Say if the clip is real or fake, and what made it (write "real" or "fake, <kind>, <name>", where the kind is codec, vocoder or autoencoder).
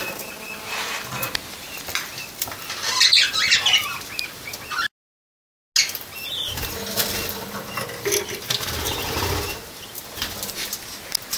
real